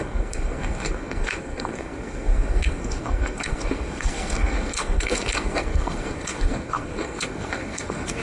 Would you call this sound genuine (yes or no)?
no